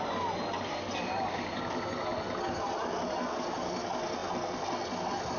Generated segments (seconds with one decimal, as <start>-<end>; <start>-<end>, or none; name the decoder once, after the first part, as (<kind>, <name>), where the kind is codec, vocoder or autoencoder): 2.1-3.0 (vocoder, BigVGAN v2)